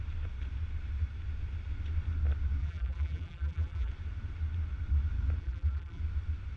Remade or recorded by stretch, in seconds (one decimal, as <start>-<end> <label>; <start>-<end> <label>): 0.0-2.6 recorded; 2.6-3.9 remade; 3.9-5.4 recorded; 5.4-6.0 remade; 6.0-6.6 recorded